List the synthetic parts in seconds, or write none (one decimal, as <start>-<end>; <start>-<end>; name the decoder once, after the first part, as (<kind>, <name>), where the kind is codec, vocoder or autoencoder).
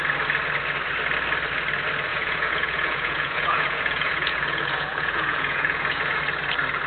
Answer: 2.1-6.2 (vocoder, Vocos)